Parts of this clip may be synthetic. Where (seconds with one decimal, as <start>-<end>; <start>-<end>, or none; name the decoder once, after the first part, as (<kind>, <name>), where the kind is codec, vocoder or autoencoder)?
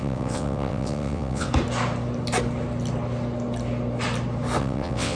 0.0-1.5 (vocoder, WaveNeXt); 4.6-5.2